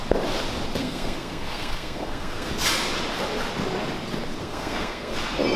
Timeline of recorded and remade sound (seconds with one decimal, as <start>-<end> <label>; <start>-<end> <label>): 0.0-0.8 recorded; 0.8-2.5 remade; 2.5-4.4 recorded; 4.4-5.1 remade; 5.1-5.6 recorded